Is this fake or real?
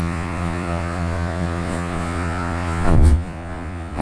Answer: fake